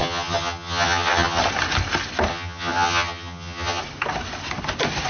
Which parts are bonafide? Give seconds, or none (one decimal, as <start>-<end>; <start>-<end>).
1.4-2.3; 3.8-5.1